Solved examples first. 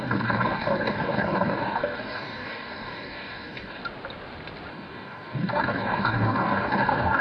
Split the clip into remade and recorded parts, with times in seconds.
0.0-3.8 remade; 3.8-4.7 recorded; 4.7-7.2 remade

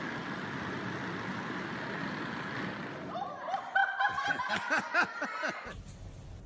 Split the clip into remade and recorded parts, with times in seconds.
0.0-6.5 recorded